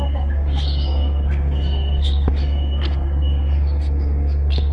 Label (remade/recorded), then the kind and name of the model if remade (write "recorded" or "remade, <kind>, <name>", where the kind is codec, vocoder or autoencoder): remade, codec, SNAC